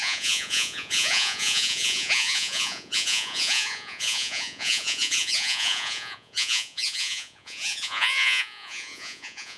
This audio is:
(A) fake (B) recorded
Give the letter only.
A